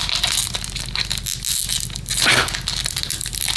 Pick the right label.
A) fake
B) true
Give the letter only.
B